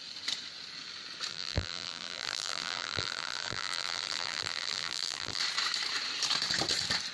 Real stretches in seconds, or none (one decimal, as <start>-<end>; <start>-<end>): 0.0-1.3; 5.4-7.1